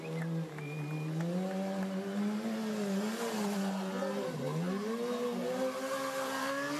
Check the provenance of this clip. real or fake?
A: real